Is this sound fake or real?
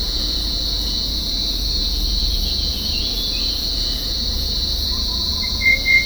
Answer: fake